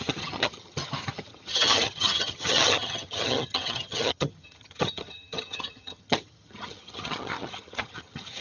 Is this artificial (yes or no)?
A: yes